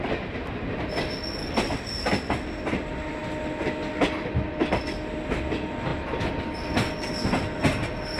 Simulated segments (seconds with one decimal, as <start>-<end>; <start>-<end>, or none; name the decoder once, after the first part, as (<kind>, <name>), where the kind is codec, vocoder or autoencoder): none